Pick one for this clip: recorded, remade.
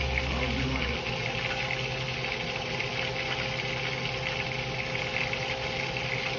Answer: recorded